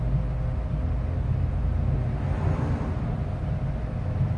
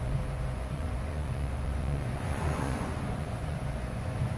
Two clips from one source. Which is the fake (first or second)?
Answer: second